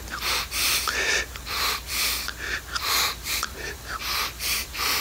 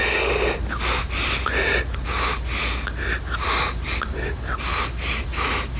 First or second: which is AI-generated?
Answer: first